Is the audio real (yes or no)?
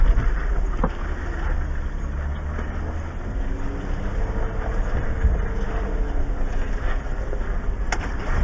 yes